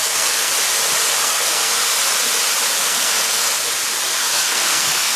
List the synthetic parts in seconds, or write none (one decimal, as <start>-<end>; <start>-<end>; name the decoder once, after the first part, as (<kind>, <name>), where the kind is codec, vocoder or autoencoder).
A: 0.0-0.5 (codec, SNAC); 1.2-1.8; 2.8-3.5; 4.2-5.2

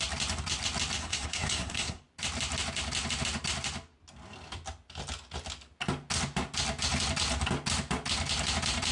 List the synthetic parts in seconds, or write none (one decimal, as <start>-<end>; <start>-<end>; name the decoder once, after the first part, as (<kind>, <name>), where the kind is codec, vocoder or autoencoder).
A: 1.0-2.0 (codec, SNAC)

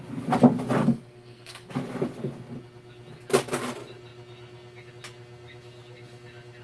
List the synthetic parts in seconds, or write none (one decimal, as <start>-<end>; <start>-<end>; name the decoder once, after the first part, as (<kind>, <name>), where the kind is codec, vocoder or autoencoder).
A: 0.8-1.7 (codec, SNAC)

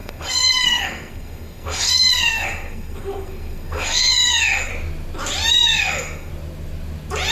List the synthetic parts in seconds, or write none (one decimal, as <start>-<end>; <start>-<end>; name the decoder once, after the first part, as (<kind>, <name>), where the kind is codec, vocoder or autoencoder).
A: 0.0-4.7 (codec, SNAC); 5.5-6.3

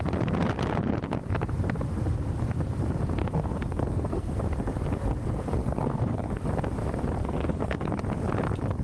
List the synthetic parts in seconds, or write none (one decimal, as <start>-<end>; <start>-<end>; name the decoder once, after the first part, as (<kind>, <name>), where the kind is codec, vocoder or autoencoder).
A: 3.2-4.4 (codec, SNAC); 5.6-6.3; 7.2-8.0

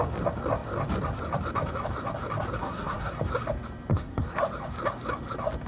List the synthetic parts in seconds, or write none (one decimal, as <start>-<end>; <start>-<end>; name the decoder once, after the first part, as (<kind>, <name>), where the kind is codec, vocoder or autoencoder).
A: 2.6-3.1 (codec, SNAC); 3.9-4.4

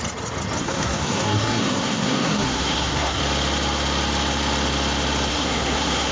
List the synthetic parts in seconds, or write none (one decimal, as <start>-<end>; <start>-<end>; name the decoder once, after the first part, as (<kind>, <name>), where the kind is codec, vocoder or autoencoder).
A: 0.6-3.2 (codec, SNAC); 5.3-6.1